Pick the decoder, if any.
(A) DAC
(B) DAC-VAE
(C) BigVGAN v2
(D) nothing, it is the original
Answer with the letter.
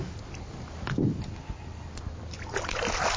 D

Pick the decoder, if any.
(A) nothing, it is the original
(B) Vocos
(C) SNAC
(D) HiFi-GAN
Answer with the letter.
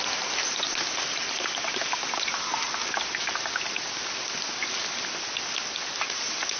A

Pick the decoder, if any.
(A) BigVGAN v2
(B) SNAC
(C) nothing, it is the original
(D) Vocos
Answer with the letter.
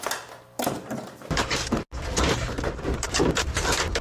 C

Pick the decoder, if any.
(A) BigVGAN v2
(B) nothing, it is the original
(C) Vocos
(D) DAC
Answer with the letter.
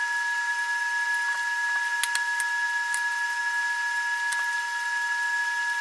B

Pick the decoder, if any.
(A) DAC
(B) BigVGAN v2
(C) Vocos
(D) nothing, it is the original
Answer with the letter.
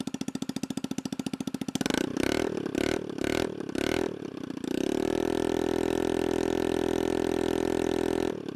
D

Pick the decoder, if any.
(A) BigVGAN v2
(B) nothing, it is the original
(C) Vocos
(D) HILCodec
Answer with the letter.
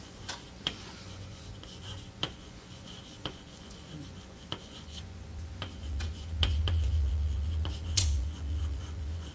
C